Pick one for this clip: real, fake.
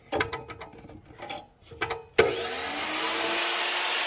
real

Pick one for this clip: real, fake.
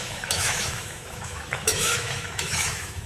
fake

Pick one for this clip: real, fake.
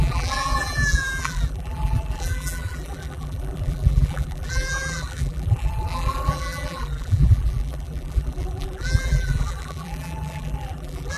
fake